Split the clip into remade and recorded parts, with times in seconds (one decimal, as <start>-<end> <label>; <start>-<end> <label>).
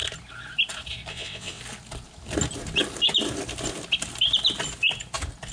0.0-1.1 recorded; 1.1-1.6 remade; 1.6-5.5 recorded